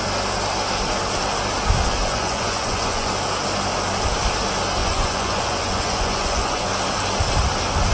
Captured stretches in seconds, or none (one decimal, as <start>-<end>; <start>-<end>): 0.0-2.0; 3.1-4.8; 6.7-7.9